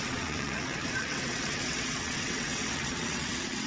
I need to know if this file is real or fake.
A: fake